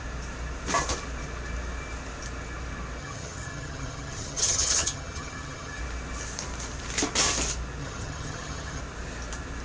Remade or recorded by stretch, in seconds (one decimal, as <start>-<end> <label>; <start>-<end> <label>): 0.0-3.0 recorded; 3.0-5.8 remade; 5.8-7.8 recorded; 7.8-8.8 remade; 8.8-9.6 recorded